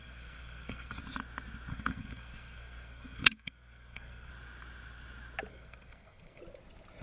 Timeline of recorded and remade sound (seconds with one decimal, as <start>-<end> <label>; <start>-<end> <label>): 0.0-1.0 remade; 1.0-1.7 recorded; 1.7-4.3 remade; 4.3-5.5 recorded; 5.5-6.4 remade; 6.4-7.0 recorded